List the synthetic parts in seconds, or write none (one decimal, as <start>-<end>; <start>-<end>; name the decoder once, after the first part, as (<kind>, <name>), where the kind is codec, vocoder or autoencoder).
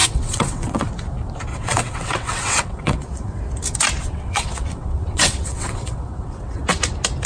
0.0-0.9 (vocoder, WaveNeXt); 1.5-3.4; 4.0-6.6